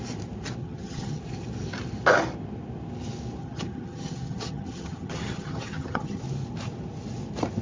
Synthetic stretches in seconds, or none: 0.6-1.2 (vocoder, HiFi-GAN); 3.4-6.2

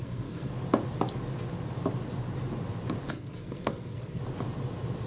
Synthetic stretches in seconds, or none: 0.0-0.5 (codec, SNAC); 3.1-4.2

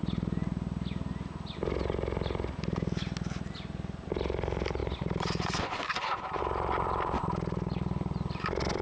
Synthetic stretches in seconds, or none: 3.5-8.8 (vocoder, BigVGAN v2)